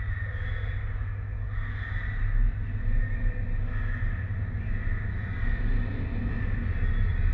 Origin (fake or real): real